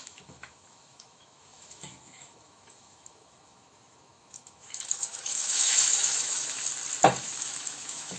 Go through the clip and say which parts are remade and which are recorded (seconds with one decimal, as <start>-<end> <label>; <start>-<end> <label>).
0.0-6.7 remade; 6.7-7.2 recorded; 7.2-8.2 remade